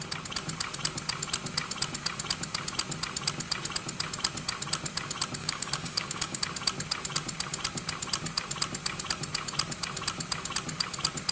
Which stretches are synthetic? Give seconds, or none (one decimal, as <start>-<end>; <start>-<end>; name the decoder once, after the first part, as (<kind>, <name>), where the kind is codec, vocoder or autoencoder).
5.4-6.4 (codec, DAC)